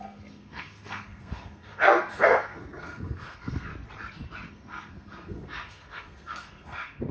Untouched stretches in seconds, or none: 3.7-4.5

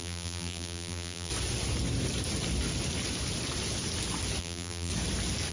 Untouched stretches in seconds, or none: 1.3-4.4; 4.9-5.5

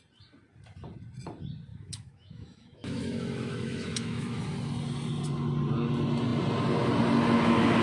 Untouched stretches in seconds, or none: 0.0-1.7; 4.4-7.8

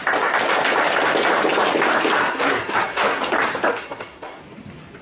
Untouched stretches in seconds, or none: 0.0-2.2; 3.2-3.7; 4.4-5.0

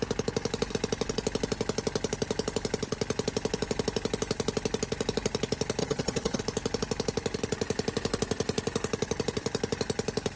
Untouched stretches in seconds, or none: 0.0-5.8; 6.4-10.4

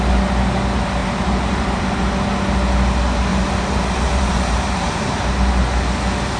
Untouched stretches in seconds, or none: 0.0-1.0; 1.8-3.3; 5.3-6.4